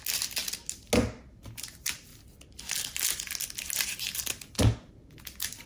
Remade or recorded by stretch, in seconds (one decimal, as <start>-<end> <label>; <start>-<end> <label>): 0.0-5.7 recorded